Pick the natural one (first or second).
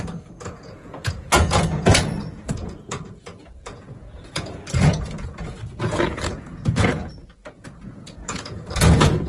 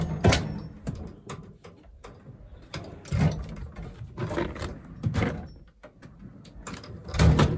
second